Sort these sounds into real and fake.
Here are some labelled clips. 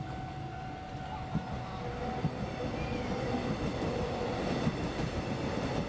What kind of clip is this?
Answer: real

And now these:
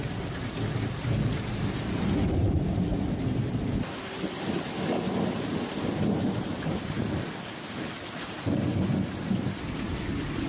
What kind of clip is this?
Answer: real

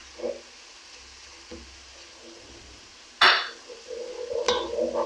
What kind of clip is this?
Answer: real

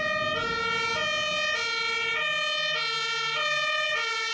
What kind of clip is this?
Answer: real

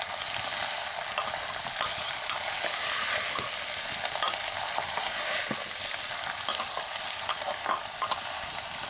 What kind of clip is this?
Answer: real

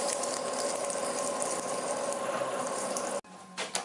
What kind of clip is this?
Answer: real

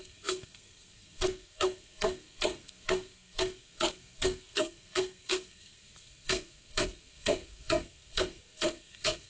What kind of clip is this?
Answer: fake